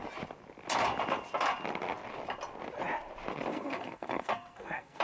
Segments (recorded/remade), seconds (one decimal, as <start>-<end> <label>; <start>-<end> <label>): 0.0-3.5 recorded; 3.5-5.0 remade

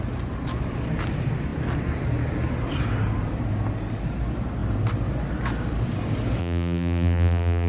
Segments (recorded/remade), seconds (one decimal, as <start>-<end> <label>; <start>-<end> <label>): 0.0-6.4 recorded; 6.4-7.7 remade